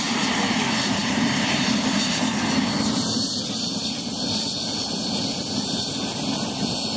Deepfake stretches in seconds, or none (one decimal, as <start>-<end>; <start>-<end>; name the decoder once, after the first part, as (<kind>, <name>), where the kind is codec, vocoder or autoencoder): none